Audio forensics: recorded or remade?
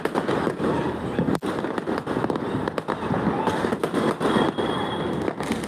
recorded